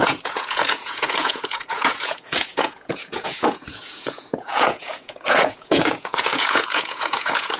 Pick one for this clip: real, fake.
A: fake